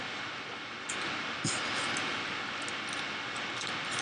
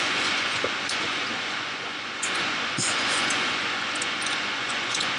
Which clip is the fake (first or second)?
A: second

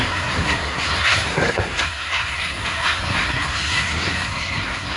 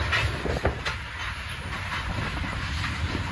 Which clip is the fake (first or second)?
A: first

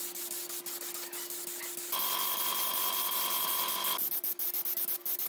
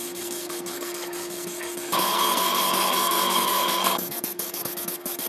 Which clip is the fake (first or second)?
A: second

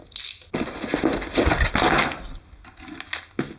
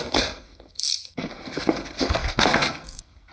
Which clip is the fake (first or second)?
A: second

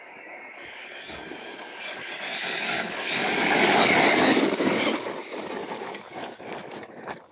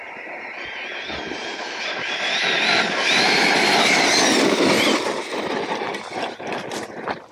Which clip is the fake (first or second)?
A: first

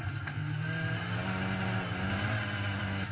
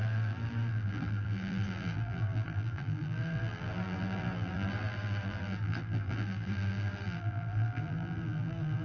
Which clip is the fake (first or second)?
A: second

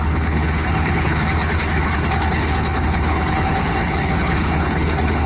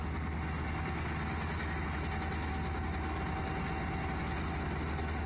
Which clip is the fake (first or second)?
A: first